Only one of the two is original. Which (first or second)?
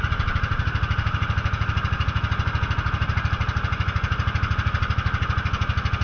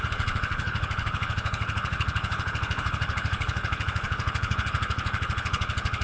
first